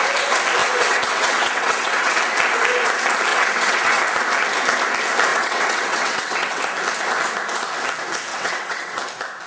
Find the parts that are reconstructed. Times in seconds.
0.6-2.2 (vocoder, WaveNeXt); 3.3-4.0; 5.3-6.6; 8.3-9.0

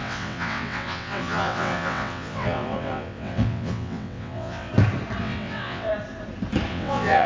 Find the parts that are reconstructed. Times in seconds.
0.0-4.7 (vocoder, WaveNeXt); 5.2-5.9; 6.7-7.3

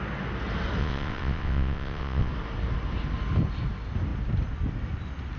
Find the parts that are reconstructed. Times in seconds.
0.8-2.3 (vocoder, WaveNeXt)

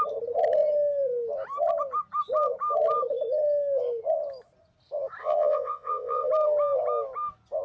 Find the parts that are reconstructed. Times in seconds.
5.2-6.3 (vocoder, WaveNeXt)

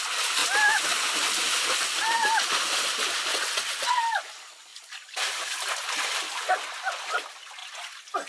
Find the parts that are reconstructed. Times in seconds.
3.3-4.0 (vocoder, WaveNeXt)